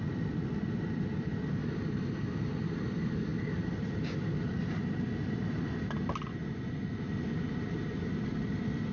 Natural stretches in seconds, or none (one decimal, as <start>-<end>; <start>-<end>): 0.0-8.9